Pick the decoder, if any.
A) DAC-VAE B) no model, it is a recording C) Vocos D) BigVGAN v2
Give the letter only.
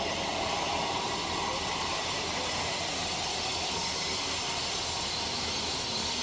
B